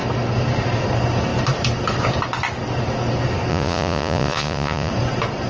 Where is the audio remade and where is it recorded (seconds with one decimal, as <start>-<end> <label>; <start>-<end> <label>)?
0.0-3.5 recorded; 3.5-4.9 remade; 4.9-5.5 recorded